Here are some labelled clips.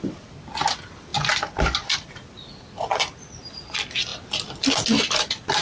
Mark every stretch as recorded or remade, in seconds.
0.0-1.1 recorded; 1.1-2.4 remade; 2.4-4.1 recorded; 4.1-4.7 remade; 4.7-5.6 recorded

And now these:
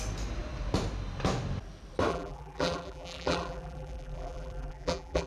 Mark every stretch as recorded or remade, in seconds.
0.0-2.1 recorded; 2.1-5.3 remade

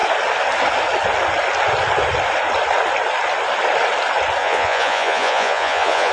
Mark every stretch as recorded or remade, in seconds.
0.0-4.4 recorded; 4.4-6.1 remade

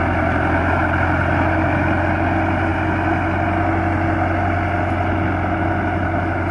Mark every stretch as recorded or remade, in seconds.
0.0-6.5 recorded

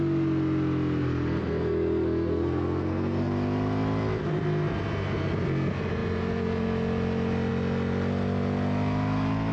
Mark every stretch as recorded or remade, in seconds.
0.0-1.0 recorded; 1.0-3.3 remade; 3.3-9.5 recorded

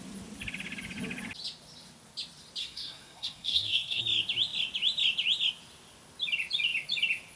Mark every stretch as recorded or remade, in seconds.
0.0-2.6 recorded; 2.6-4.0 remade; 4.0-7.4 recorded

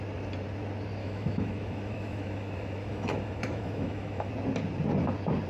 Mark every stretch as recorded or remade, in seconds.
0.0-1.0 recorded; 1.0-4.3 remade; 4.3-5.5 recorded